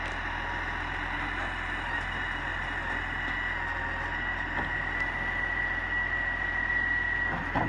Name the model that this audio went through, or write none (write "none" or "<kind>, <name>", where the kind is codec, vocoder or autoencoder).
none